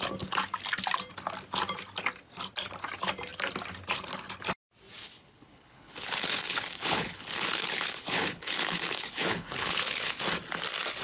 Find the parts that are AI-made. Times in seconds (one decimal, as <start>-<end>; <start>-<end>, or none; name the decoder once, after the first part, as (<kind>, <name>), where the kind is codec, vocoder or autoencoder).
5.0-10.1 (codec, HILCodec)